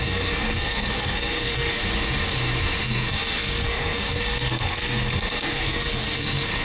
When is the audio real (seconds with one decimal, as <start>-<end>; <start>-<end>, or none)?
1.8-2.8